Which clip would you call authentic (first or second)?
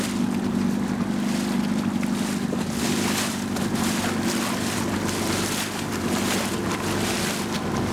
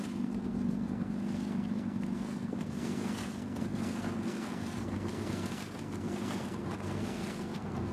first